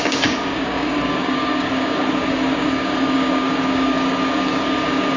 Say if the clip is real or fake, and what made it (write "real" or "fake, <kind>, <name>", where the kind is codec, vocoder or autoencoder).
fake, codec, DAC